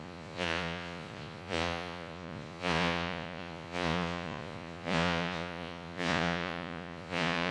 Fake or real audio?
fake